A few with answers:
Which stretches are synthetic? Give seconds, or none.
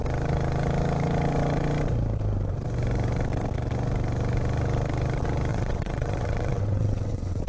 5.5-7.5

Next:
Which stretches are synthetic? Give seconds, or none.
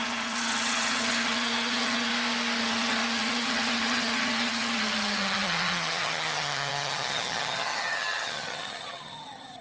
0.0-2.1; 2.6-9.6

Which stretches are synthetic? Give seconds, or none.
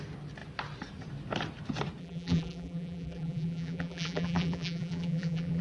2.0-5.6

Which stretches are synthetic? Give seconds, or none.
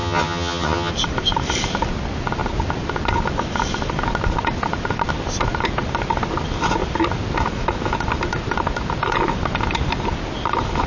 0.0-0.9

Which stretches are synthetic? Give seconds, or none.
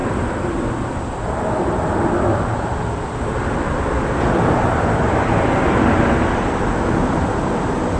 0.0-1.4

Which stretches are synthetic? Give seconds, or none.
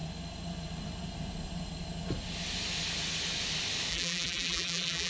3.9-5.1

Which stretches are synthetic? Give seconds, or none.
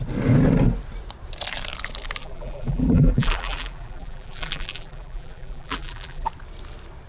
2.2-6.3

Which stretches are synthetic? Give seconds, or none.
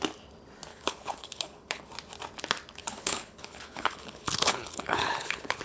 0.7-1.8; 2.8-5.6